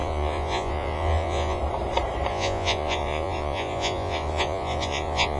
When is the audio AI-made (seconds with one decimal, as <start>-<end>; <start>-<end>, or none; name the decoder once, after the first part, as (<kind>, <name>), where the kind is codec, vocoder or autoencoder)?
0.0-1.6 (vocoder, Vocos); 2.3-5.4